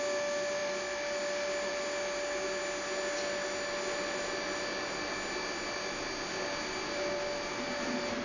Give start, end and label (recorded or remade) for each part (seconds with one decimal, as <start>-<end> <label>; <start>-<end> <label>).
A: 0.0-8.2 recorded